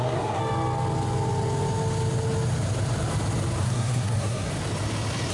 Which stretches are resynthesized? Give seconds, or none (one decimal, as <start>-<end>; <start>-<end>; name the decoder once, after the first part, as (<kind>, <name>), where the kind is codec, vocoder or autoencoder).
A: 0.0-0.4 (codec, SNAC); 3.6-4.5